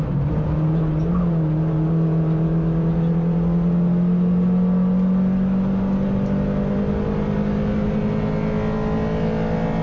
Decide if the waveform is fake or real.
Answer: real